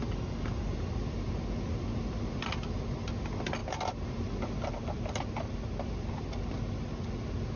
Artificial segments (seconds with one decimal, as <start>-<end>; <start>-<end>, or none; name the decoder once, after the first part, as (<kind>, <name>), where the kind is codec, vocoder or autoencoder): none